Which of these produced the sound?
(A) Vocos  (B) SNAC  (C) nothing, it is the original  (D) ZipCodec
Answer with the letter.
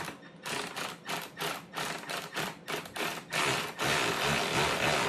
C